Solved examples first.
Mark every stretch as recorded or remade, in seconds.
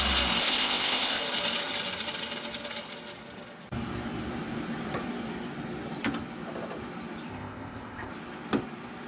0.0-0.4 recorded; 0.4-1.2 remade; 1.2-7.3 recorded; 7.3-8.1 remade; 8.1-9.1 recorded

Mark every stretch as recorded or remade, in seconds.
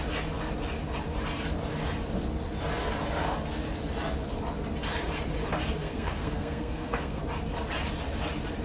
0.0-5.8 recorded; 5.8-7.2 remade; 7.2-8.6 recorded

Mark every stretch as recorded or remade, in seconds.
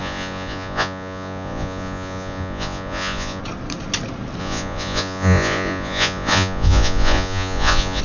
0.0-3.4 remade; 3.4-4.4 recorded; 4.4-8.0 remade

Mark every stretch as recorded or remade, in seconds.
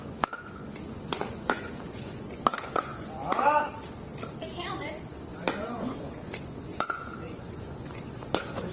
0.0-3.2 remade; 3.2-4.7 recorded; 4.7-8.7 remade